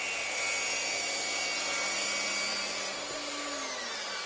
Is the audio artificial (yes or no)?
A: no